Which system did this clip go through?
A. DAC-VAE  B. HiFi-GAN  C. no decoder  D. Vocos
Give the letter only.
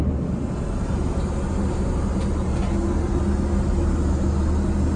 C